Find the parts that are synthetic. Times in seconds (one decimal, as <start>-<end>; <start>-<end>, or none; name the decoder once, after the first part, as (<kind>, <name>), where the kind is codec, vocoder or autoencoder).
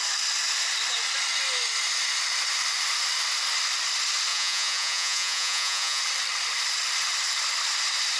4.3-6.0 (vocoder, Vocos)